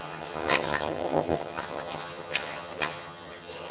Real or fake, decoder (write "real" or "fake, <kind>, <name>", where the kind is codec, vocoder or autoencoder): fake, vocoder, HiFi-GAN